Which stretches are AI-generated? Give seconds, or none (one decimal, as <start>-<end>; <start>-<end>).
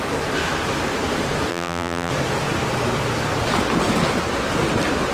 1.5-2.1